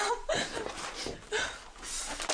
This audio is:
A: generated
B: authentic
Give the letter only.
B